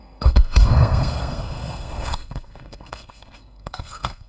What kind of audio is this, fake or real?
fake